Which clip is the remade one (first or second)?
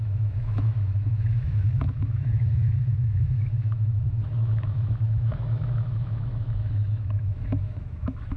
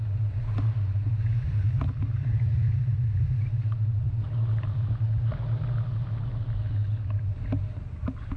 first